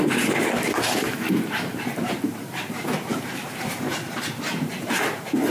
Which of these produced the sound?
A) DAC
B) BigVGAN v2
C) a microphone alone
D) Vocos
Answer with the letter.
B